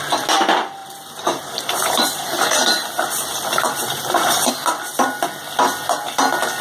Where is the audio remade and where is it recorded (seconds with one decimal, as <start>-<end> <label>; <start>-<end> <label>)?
0.0-0.8 recorded; 0.8-4.5 remade; 4.5-6.6 recorded